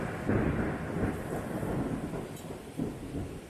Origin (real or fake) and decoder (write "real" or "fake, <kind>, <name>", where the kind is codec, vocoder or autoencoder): real